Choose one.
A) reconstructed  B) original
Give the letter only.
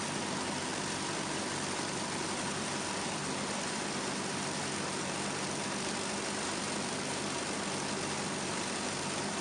B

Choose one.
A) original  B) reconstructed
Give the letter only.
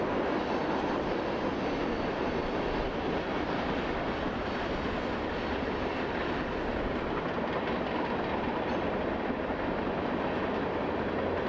A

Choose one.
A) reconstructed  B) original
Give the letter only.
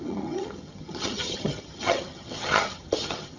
A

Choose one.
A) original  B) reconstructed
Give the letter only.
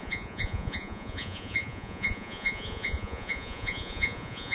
B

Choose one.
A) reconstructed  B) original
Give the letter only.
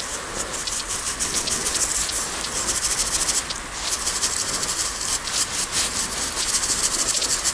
B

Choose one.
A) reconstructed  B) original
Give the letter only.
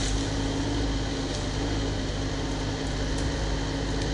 B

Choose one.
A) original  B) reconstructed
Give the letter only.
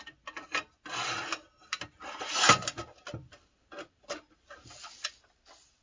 A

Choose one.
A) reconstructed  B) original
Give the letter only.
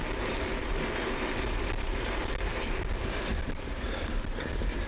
B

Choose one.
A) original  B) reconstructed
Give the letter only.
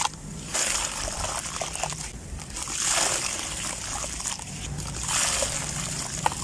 A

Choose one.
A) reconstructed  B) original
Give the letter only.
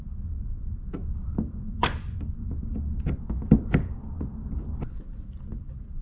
A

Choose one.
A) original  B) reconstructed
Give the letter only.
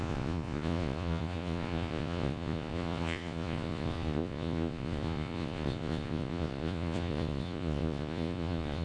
B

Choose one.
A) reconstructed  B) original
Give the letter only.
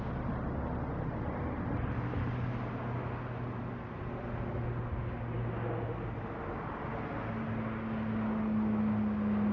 B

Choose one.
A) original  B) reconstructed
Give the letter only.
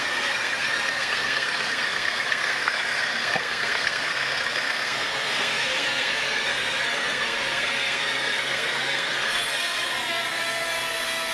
B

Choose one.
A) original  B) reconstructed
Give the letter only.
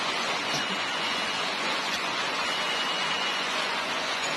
B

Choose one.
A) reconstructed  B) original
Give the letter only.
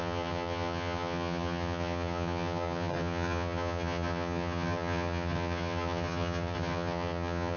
A